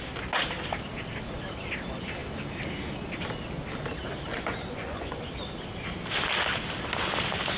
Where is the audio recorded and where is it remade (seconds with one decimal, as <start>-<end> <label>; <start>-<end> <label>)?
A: 0.0-4.3 recorded; 4.3-5.2 remade; 5.2-7.6 recorded